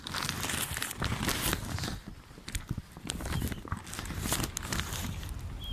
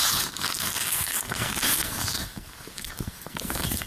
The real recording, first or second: first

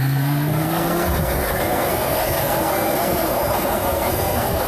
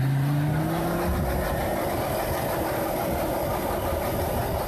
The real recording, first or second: second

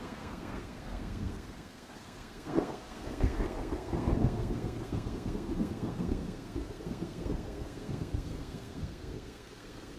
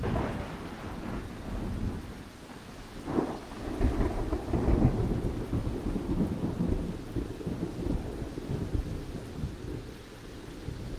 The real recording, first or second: second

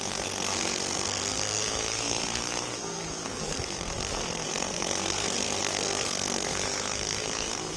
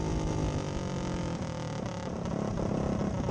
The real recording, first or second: second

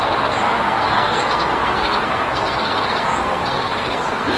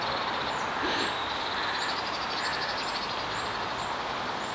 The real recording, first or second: second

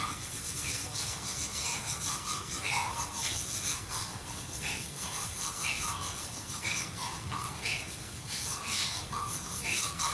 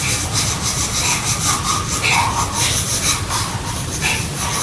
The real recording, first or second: second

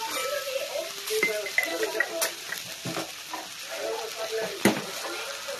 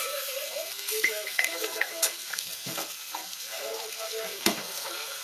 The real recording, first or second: first